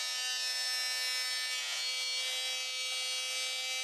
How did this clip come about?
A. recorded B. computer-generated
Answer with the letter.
A